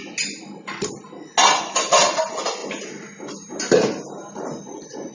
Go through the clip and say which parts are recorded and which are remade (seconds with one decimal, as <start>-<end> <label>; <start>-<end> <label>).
0.0-5.1 recorded